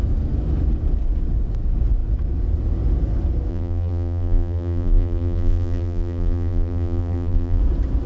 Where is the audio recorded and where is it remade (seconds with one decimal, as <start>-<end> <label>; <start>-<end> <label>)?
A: 0.0-3.5 recorded; 3.5-7.6 remade; 7.6-8.1 recorded